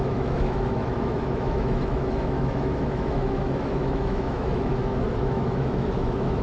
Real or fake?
fake